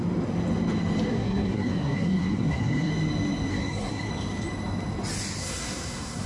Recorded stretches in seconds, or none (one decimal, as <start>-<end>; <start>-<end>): 0.0-1.1; 2.9-3.5; 4.1-5.4